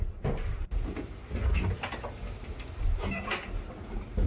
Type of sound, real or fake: real